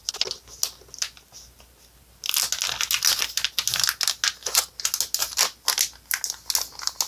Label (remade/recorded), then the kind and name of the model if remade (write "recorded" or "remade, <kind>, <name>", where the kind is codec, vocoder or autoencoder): recorded